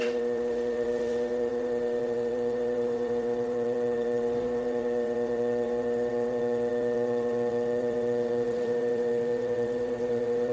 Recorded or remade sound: remade